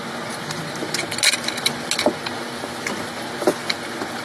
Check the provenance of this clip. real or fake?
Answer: real